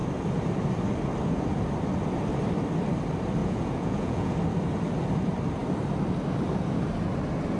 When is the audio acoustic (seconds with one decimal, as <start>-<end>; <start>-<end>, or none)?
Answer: 0.0-3.4; 4.3-7.6